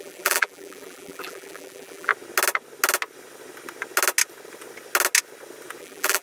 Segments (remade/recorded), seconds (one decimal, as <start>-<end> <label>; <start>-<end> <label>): 0.0-2.1 remade; 2.1-5.8 recorded; 5.8-6.2 remade